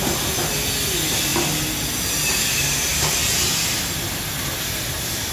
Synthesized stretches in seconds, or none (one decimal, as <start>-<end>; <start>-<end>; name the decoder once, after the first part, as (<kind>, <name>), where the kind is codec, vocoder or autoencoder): none